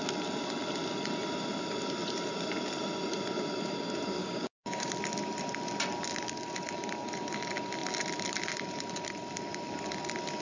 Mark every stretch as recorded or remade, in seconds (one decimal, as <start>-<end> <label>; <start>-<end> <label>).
0.0-4.2 recorded; 4.2-4.9 remade; 4.9-10.4 recorded